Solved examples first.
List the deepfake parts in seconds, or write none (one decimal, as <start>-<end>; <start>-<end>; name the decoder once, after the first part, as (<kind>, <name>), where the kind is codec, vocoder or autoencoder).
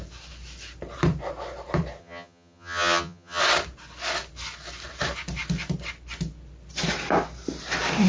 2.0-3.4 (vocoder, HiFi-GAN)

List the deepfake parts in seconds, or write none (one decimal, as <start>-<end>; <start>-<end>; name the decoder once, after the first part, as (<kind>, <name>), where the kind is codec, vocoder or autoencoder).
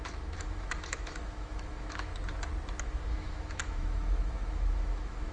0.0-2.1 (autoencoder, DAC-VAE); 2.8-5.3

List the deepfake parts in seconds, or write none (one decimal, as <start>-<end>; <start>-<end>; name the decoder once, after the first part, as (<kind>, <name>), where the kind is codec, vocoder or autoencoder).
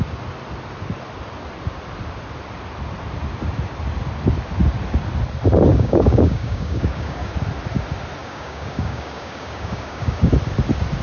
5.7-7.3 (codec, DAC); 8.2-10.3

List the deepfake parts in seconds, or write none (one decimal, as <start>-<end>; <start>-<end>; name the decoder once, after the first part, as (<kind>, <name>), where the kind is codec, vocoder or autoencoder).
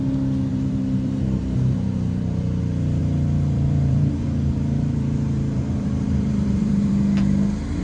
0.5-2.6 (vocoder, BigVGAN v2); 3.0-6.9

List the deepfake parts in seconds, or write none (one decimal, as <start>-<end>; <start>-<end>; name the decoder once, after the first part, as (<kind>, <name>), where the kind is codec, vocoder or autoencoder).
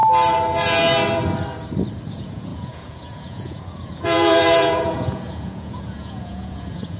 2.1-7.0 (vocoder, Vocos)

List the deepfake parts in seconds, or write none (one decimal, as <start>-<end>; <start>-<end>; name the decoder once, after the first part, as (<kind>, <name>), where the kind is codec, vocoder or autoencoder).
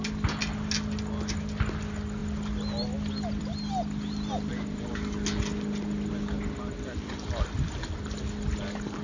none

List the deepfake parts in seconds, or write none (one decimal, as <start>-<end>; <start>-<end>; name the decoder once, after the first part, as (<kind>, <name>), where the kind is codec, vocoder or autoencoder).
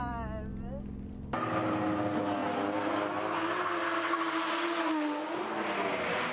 none